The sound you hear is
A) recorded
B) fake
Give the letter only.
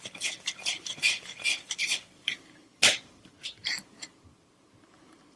B